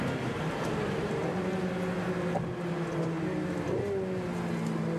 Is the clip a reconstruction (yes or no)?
no